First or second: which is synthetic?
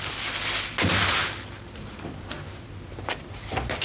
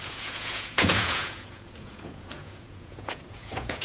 second